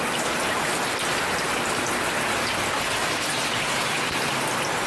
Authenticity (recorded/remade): recorded